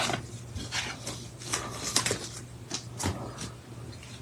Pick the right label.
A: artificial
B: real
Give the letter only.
B